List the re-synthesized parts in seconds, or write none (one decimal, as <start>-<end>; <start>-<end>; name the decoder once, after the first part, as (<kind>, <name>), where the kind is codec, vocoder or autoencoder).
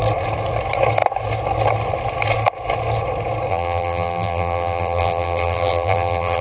3.5-6.4 (vocoder, BigVGAN v2)